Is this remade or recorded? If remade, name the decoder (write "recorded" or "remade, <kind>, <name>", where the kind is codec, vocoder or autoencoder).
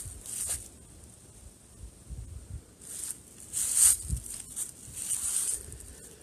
recorded